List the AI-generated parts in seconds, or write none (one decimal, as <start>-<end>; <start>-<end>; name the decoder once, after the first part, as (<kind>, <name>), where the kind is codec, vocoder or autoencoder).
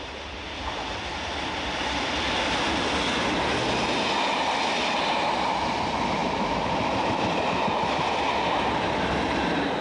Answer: none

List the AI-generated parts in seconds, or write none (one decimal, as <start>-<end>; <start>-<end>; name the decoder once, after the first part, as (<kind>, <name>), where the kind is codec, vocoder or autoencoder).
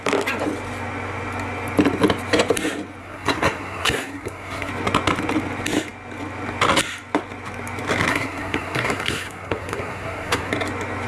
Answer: 3.0-4.7 (codec, SNAC); 8.1-10.5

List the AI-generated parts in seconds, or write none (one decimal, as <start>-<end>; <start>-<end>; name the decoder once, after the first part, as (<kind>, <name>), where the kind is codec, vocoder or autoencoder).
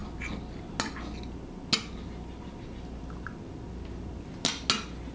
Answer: none